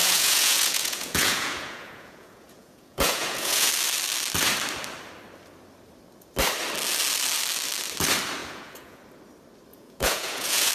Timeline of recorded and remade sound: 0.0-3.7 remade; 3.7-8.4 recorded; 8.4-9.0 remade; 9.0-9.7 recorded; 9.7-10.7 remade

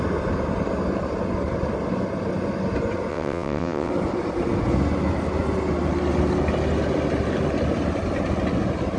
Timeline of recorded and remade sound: 0.0-3.1 recorded; 3.1-3.9 remade; 3.9-9.0 recorded